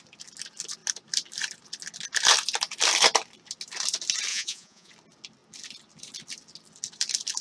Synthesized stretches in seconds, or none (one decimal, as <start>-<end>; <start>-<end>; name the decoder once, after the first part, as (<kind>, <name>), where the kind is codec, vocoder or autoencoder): 4.3-4.9 (vocoder, Vocos)